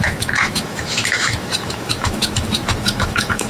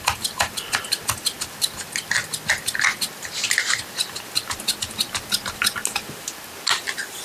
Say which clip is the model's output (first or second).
first